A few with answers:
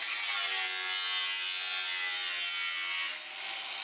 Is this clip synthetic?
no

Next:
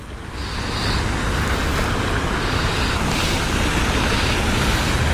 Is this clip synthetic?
no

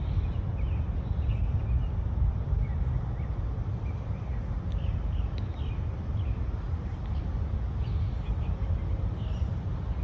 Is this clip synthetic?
no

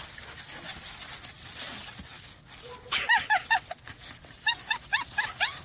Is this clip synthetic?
no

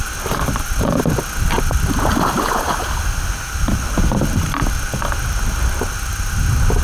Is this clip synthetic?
no